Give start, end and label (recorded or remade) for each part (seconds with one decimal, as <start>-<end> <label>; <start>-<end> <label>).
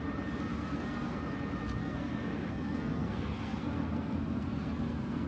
0.0-0.5 recorded; 0.5-1.2 remade; 1.2-1.8 recorded; 1.8-5.3 remade